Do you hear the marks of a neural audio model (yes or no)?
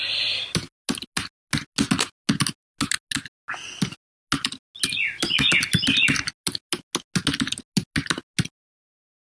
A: no